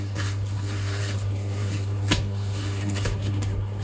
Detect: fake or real fake